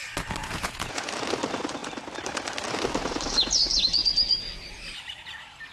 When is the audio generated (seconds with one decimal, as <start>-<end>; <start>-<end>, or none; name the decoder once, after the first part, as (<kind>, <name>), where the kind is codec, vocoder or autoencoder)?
0.4-1.1 (vocoder, Vocos)